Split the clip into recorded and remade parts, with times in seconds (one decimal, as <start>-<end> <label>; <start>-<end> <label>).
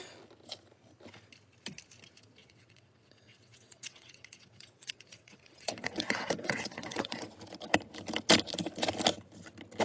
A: 0.0-2.4 recorded; 2.4-7.3 remade; 7.3-9.8 recorded